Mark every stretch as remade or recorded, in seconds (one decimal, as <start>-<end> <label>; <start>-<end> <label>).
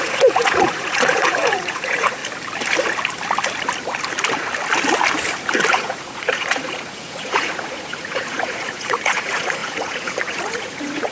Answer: 0.0-2.2 remade; 2.2-5.7 recorded; 5.7-11.1 remade